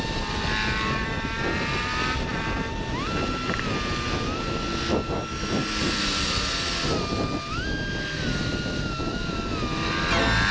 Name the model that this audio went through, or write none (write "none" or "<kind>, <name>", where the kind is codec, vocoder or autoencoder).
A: none